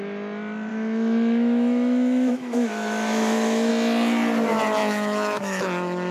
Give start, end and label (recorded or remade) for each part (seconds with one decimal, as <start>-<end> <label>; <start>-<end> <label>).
0.0-0.7 recorded; 0.7-3.7 remade; 3.7-4.8 recorded; 4.8-6.1 remade